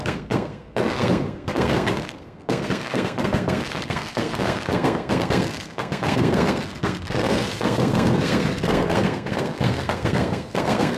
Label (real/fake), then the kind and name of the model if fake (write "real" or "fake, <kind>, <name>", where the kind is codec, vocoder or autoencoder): fake, codec, SNAC